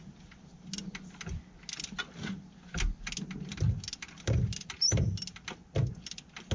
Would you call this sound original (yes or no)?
yes